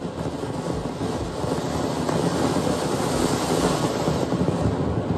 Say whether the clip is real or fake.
real